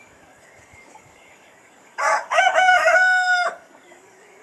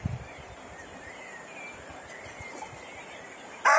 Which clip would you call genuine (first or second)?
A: second